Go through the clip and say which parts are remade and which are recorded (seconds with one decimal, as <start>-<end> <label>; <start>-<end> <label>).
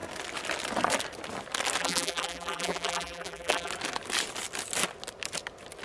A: 0.0-1.8 recorded; 1.8-3.7 remade; 3.7-5.8 recorded